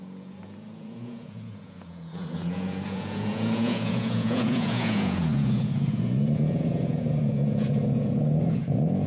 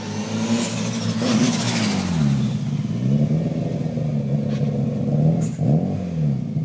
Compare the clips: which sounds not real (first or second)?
first